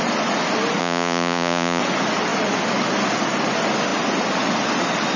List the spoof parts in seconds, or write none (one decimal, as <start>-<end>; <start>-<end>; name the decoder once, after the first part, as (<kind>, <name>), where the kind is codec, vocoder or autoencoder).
0.8-1.8 (vocoder, Vocos)